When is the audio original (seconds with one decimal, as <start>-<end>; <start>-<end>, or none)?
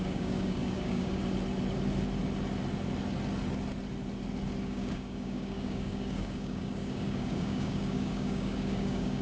1.2-4.6